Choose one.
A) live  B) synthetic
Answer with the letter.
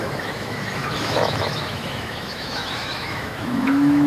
B